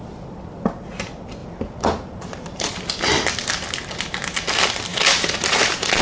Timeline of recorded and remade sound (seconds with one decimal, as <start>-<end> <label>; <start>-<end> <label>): 0.0-1.4 recorded; 1.4-2.7 remade; 2.7-4.9 recorded; 4.9-6.0 remade